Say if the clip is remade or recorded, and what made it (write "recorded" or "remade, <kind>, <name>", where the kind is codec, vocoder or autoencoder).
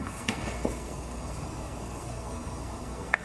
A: remade, codec, SNAC